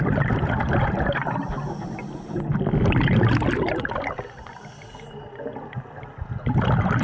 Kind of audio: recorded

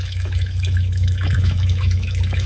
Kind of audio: remade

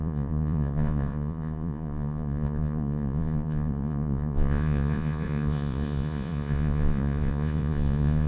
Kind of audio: remade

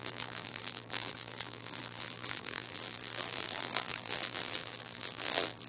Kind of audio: remade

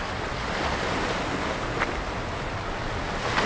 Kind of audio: recorded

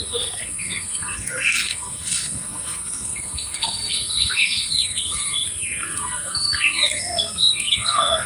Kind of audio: remade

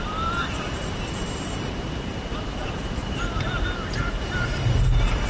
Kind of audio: remade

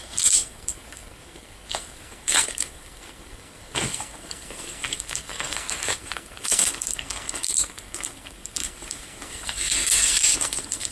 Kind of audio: remade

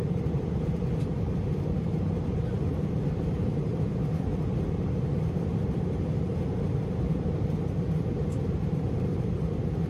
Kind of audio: remade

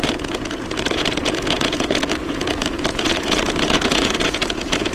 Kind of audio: remade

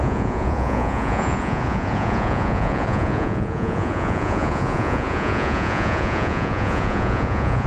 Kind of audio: remade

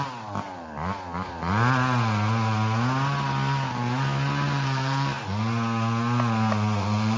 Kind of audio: recorded